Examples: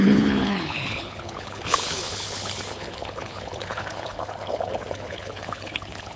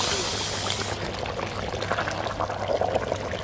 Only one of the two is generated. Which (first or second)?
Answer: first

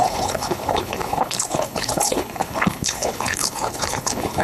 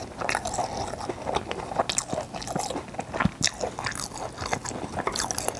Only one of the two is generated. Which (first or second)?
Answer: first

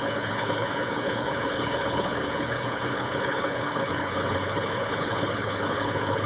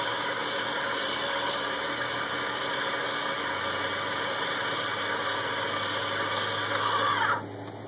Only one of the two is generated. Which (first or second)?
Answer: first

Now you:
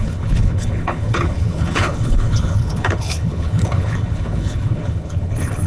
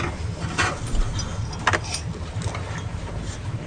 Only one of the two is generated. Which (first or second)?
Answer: first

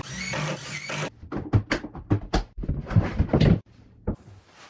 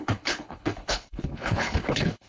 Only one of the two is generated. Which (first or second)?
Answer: second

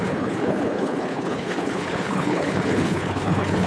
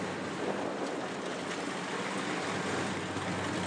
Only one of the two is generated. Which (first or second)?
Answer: first